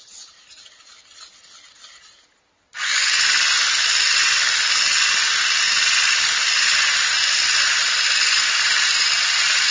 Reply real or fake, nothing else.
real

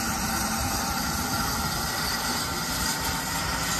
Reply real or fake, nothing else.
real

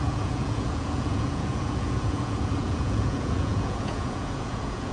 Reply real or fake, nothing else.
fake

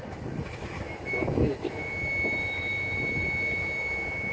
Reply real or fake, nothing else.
fake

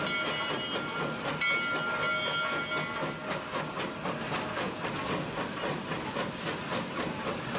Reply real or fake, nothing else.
real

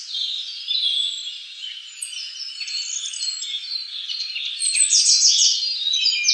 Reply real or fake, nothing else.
real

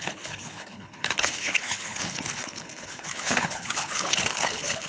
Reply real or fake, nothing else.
fake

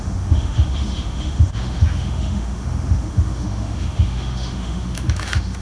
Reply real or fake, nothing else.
fake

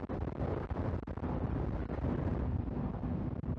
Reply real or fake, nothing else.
real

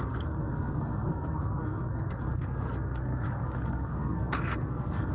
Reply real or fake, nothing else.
fake